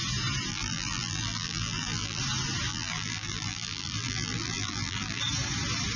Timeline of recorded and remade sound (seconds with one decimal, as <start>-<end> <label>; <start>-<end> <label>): 0.0-0.5 recorded; 0.5-2.2 remade; 2.2-2.7 recorded; 2.7-5.2 remade; 5.2-6.0 recorded